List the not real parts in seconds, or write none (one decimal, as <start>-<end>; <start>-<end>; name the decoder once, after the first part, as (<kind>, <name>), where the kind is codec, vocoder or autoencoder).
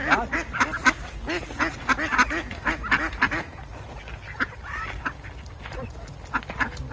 none